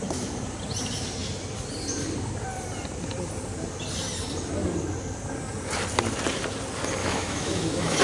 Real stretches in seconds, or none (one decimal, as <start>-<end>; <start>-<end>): 0.0-7.0